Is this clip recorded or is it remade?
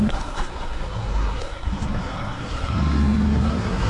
remade